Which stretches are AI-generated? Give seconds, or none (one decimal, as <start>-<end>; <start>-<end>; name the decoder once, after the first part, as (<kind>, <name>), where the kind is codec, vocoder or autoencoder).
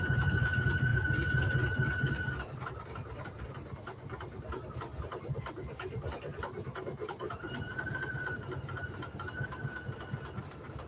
none